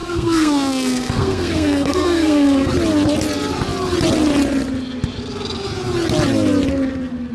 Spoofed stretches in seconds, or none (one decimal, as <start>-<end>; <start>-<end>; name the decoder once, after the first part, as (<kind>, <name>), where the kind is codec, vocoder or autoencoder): 0.0-2.7 (codec, SNAC)